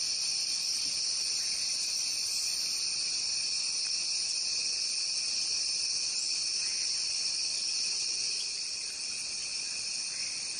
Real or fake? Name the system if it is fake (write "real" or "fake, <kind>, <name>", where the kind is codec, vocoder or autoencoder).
real